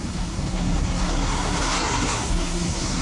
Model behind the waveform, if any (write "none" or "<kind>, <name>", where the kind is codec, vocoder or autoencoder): codec, SNAC